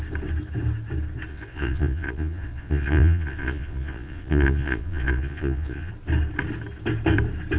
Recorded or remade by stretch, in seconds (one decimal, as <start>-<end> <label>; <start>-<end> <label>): 0.0-1.3 recorded; 1.3-5.9 remade; 5.9-7.6 recorded